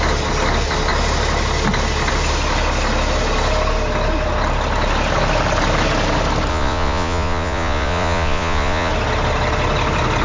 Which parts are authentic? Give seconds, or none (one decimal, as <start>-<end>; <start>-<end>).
0.0-6.5; 8.9-10.2